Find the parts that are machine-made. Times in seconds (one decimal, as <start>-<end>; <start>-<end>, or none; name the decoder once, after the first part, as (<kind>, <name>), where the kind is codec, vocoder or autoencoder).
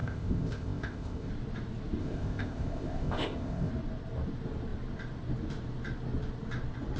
0.0-1.3 (codec, ZipCodec); 2.0-3.7